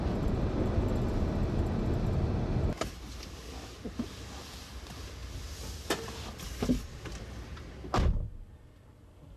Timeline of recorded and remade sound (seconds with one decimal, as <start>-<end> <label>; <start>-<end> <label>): 0.0-9.4 recorded